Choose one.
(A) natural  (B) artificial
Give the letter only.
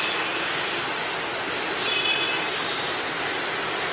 A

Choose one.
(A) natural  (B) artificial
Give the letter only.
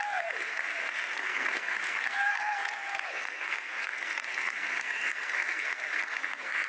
B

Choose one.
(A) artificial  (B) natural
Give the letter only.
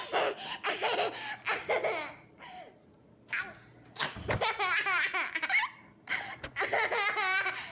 B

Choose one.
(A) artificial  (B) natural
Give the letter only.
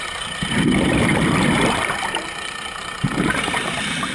A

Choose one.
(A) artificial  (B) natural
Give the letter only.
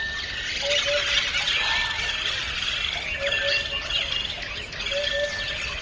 B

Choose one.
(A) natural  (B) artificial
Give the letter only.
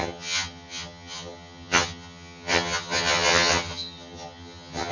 B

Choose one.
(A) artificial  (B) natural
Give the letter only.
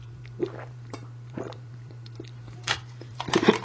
A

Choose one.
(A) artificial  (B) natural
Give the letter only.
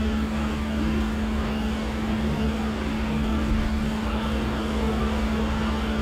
A